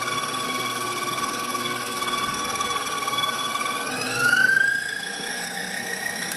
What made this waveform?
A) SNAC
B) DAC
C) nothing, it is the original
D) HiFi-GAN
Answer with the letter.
A